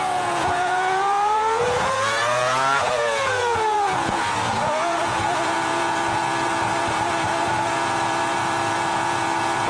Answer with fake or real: fake